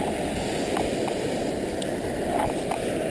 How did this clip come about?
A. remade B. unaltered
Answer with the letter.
B